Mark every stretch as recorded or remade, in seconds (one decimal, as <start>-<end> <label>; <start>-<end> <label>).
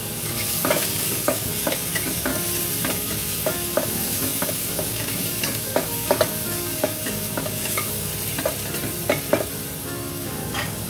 0.0-2.3 remade; 2.3-2.9 recorded; 2.9-8.1 remade; 8.1-9.8 recorded; 9.8-10.9 remade